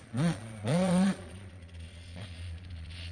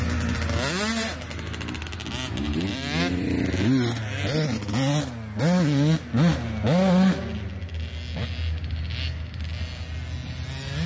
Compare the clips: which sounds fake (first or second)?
first